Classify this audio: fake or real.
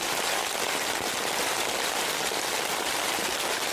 real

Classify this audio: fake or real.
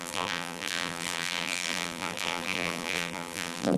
fake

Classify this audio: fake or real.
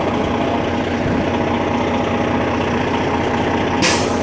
real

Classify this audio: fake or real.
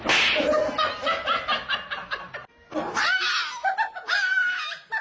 real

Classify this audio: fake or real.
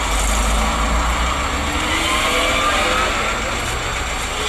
real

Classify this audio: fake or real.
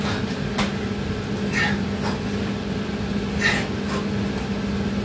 real